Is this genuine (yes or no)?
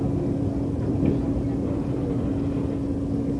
yes